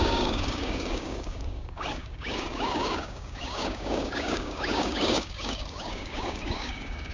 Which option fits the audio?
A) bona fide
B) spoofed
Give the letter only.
B